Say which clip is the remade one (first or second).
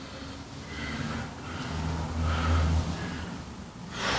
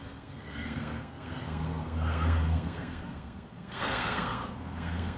second